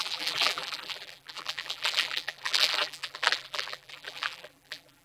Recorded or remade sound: remade